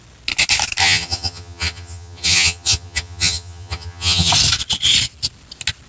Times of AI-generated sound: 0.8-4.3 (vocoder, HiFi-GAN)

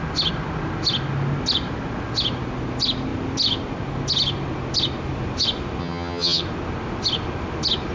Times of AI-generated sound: 5.8-6.4 (vocoder, HiFi-GAN)